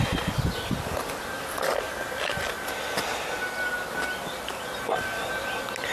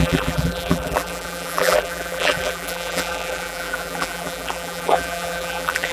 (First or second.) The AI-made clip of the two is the second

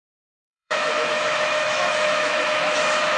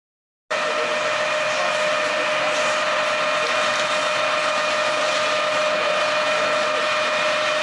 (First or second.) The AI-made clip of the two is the first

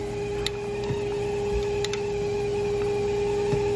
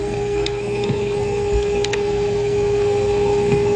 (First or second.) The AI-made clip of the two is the second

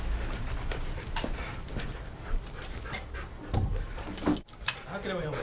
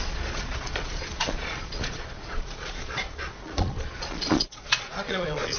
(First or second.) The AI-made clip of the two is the second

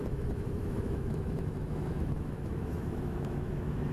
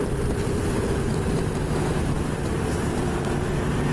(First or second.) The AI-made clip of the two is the first